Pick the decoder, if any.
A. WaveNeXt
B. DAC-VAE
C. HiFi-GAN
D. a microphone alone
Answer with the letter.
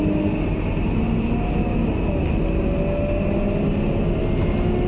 D